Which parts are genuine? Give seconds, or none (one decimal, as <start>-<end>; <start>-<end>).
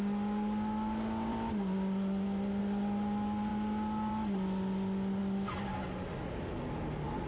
0.0-1.3; 2.6-7.3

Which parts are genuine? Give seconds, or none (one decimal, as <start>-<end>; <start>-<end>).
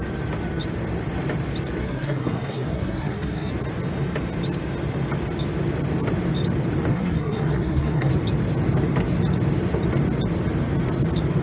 0.0-1.8; 3.5-6.9; 8.1-11.4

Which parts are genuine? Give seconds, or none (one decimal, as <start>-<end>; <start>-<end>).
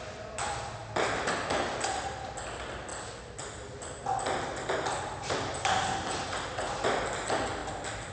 0.0-8.1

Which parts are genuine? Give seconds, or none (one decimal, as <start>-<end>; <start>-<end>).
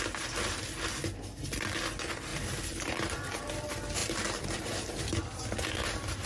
0.0-2.3; 2.9-4.0; 5.0-6.3